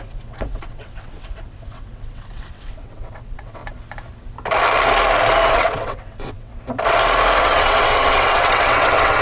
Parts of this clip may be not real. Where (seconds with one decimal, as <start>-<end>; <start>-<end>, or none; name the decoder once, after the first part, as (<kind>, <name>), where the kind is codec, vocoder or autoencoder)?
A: 0.0-3.6 (vocoder, WaveNeXt); 5.5-6.5; 7.4-9.2